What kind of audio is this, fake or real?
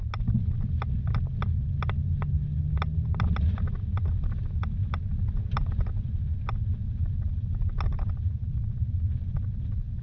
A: real